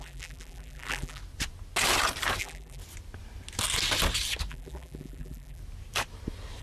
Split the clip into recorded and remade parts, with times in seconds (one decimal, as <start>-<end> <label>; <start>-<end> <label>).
0.0-1.2 remade; 1.2-2.4 recorded; 2.4-2.8 remade; 2.8-4.5 recorded; 4.5-5.6 remade; 5.6-6.6 recorded